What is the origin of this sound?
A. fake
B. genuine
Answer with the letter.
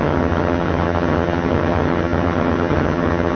A